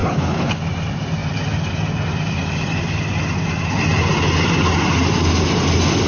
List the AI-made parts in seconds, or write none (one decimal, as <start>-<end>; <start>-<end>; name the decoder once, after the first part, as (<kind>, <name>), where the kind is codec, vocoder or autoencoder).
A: 0.0-0.6 (codec, HILCodec)